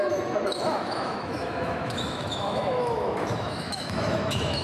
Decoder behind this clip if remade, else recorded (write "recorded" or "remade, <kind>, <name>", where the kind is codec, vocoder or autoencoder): remade, autoencoder, DAC-VAE